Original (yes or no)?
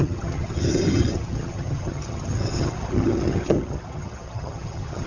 no